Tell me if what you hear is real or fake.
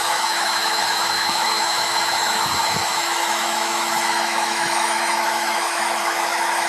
fake